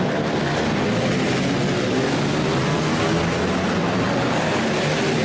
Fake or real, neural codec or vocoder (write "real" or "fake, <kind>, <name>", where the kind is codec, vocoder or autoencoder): real